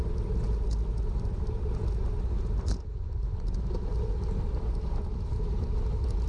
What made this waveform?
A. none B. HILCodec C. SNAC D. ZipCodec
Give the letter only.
A